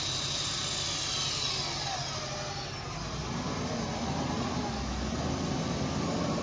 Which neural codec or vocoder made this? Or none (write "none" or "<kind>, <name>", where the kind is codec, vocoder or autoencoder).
none